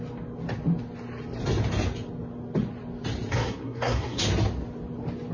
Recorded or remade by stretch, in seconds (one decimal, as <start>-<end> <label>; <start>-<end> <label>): 0.0-3.3 recorded; 3.3-4.2 remade; 4.2-5.3 recorded